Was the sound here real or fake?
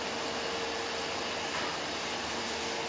real